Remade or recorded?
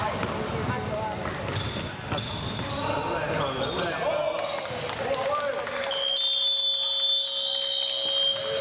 recorded